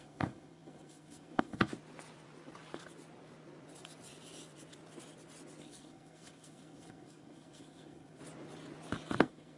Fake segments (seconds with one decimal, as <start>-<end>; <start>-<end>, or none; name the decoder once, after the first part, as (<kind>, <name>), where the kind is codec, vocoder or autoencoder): 0.0-1.7 (codec, SNAC); 5.6-8.2; 9.2-9.6